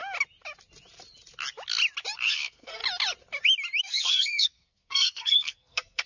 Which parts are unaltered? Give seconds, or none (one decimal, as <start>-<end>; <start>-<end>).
0.0-2.3; 2.8-3.8